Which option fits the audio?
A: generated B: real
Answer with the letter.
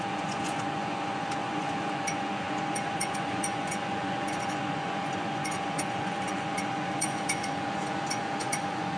A